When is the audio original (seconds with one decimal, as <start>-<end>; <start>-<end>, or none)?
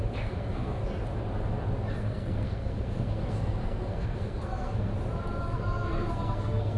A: 0.8-1.9; 4.9-5.4